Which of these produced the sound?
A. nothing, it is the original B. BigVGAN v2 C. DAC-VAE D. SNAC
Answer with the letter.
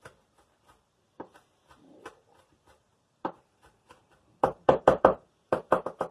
B